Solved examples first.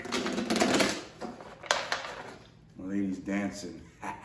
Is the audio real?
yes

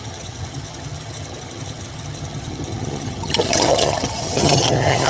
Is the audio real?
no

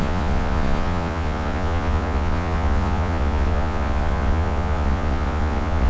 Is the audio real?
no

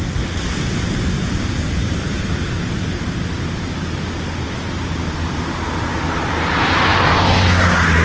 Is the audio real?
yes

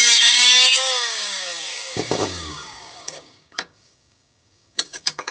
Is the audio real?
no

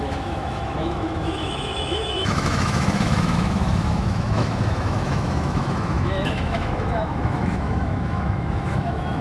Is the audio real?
no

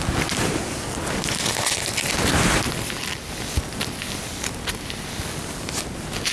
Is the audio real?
yes